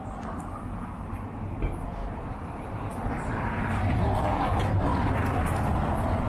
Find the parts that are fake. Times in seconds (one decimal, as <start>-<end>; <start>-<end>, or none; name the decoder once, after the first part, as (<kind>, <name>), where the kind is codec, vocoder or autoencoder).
2.0-4.0 (vocoder, BigVGAN v2); 4.9-6.3